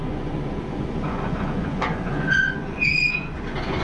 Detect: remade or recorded remade